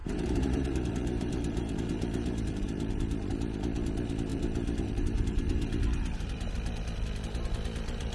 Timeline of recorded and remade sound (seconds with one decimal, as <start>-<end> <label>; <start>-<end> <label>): 0.0-2.9 remade; 2.9-4.3 recorded; 4.3-6.5 remade; 6.5-8.1 recorded